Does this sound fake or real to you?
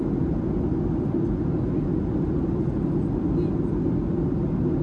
real